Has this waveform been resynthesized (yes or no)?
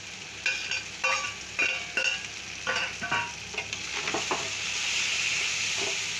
no